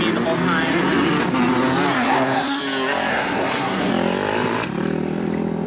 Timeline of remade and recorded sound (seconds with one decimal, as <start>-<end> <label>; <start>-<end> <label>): 0.0-1.9 recorded; 1.9-2.6 remade; 2.6-3.1 recorded; 3.1-3.9 remade; 3.9-5.7 recorded

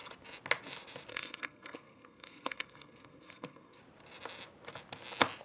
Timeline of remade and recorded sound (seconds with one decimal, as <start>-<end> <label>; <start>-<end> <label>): 0.0-1.1 recorded; 1.1-3.8 remade; 3.8-5.4 recorded

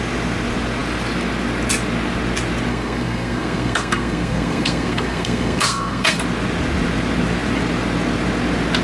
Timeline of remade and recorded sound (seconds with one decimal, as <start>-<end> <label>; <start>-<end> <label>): 0.0-2.7 recorded; 2.7-6.2 remade; 6.2-8.8 recorded

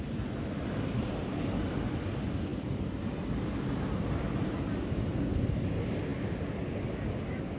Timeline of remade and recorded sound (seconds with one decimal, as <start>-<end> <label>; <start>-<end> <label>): 0.0-7.6 recorded